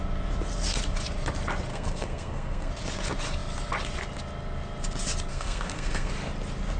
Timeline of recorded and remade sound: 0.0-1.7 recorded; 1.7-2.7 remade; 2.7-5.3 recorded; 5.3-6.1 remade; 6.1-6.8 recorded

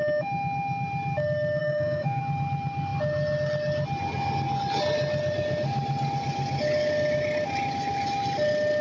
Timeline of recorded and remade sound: 0.0-1.6 recorded; 1.6-2.2 remade; 2.2-8.8 recorded

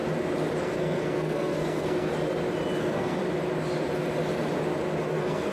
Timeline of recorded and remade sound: 0.0-0.6 recorded; 0.6-2.1 remade; 2.1-2.8 recorded; 2.8-3.2 remade; 3.2-5.1 recorded; 5.1-5.5 remade